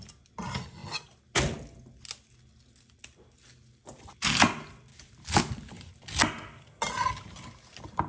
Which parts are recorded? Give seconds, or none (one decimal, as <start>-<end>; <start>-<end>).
0.0-8.1